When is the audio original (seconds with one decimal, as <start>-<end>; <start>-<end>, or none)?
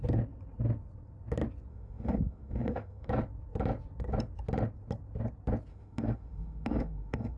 0.0-1.7; 3.1-5.7